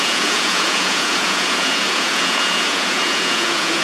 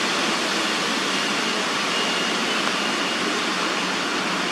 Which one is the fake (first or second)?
first